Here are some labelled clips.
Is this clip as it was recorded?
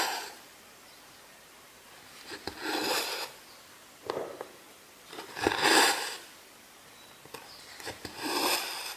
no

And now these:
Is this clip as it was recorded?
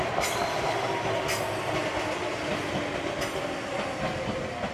yes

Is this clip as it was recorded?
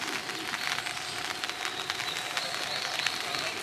yes